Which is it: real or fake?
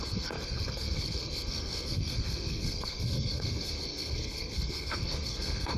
fake